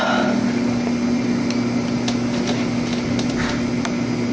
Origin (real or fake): real